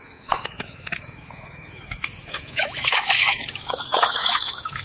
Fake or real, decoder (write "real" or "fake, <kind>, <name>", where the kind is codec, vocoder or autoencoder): fake, autoencoder, DAC-VAE